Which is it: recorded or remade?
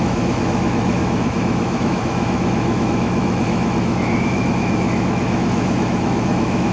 remade